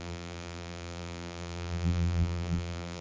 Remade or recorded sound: remade